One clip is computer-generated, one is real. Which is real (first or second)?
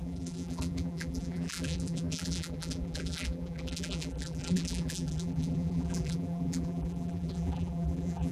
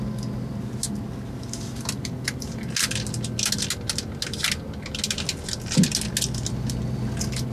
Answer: second